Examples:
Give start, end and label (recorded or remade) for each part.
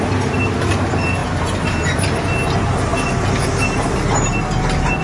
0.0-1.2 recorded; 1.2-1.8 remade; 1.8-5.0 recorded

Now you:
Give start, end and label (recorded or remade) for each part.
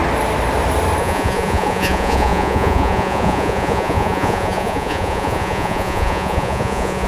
0.0-1.0 recorded; 1.0-7.1 remade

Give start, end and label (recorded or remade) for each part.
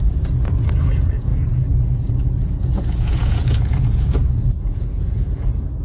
0.0-5.8 remade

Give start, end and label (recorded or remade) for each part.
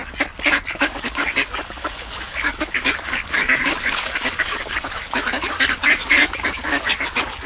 0.0-0.7 recorded; 0.7-7.5 remade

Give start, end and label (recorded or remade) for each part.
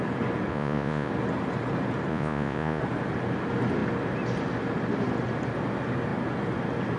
0.0-0.5 recorded; 0.5-1.1 remade; 1.1-2.1 recorded; 2.1-2.8 remade; 2.8-7.0 recorded